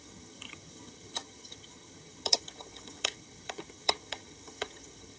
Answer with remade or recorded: remade